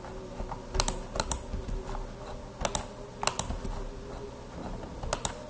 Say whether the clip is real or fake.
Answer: real